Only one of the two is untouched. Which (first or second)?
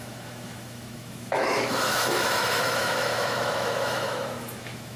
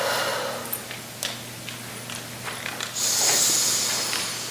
second